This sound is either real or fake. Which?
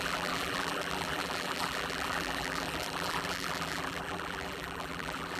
fake